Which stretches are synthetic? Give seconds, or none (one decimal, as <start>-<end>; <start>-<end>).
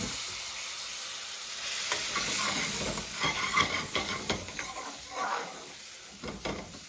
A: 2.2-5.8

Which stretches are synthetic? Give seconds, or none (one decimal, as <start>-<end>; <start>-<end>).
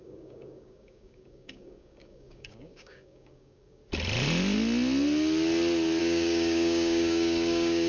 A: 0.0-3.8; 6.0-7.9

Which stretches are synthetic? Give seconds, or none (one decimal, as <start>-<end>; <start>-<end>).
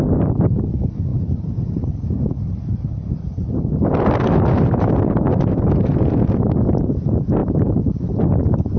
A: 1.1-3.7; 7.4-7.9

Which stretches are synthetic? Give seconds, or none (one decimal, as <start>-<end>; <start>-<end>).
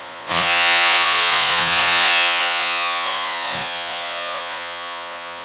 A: 0.0-5.4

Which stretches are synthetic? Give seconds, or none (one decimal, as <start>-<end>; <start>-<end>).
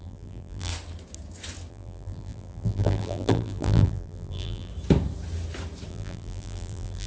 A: 0.0-0.7; 1.7-4.7; 5.9-7.1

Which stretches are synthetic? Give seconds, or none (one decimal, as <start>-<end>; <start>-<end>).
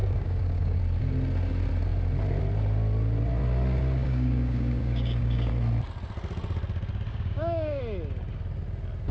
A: 0.0-0.8; 4.0-5.5; 7.1-7.8